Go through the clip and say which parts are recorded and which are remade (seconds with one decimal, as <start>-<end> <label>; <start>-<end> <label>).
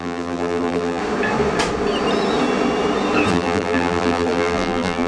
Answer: 0.0-1.0 remade; 1.0-3.3 recorded; 3.3-5.1 remade